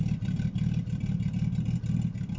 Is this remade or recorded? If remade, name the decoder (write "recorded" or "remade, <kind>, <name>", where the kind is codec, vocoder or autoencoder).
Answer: recorded